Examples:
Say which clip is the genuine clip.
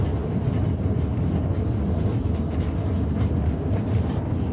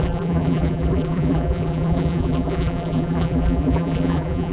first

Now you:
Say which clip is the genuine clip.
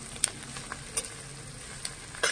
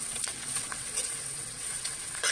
first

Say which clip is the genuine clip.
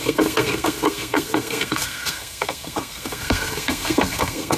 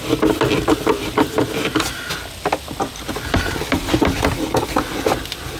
second